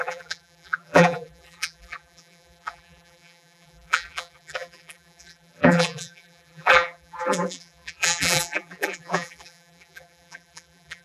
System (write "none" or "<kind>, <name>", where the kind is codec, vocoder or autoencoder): vocoder, BigVGAN v2